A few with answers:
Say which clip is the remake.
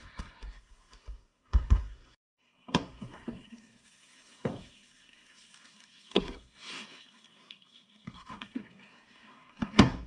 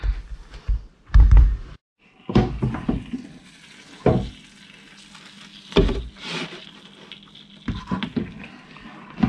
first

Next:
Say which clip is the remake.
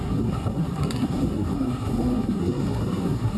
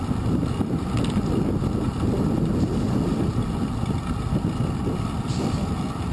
first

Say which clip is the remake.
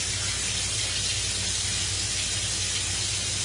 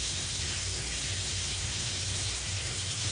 second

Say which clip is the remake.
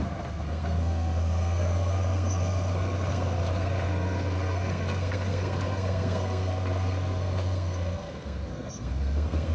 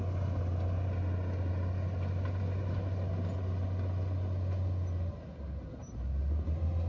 first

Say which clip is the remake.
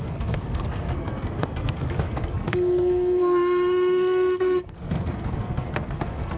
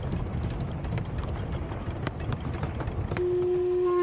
first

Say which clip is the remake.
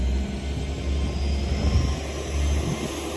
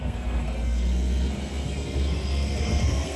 second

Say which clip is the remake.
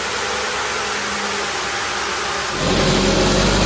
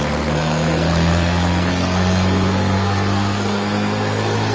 second